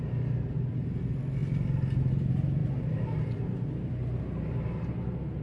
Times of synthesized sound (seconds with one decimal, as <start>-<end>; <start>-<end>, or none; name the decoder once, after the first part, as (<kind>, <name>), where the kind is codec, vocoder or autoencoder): none